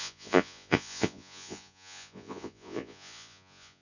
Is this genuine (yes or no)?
no